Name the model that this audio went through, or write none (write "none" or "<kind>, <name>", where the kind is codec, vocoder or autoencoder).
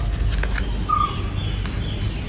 none